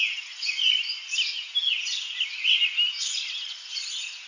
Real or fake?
real